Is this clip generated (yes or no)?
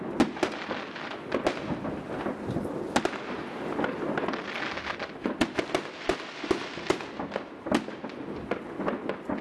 no